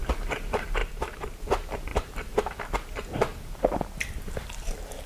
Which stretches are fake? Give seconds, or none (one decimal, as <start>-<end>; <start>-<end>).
0.8-1.4; 1.9-5.1